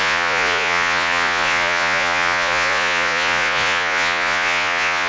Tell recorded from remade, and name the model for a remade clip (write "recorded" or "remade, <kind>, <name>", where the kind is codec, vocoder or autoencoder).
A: remade, vocoder, Vocos